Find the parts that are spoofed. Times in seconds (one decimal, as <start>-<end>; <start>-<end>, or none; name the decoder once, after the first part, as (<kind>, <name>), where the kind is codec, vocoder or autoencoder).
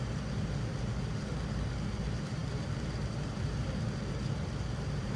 none